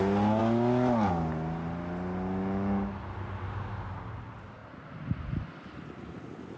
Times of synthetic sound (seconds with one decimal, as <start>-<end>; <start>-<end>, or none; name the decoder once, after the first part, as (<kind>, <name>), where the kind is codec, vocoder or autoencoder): none